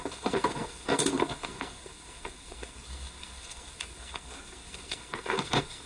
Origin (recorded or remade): remade